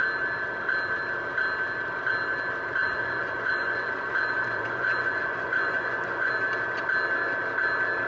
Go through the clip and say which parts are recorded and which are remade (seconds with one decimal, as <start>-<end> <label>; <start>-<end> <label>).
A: 0.0-2.8 recorded; 2.8-6.3 remade; 6.3-8.1 recorded